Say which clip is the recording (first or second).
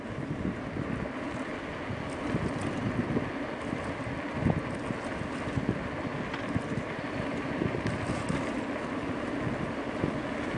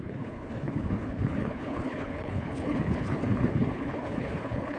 first